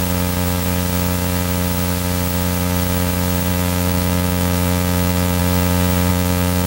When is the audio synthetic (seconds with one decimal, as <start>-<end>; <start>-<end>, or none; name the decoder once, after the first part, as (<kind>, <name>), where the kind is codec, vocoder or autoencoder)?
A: 3.5-5.4 (autoencoder, DAC-VAE); 6.1-6.7